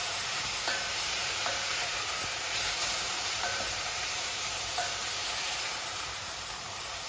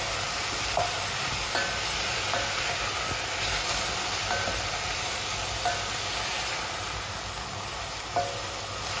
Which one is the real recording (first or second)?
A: second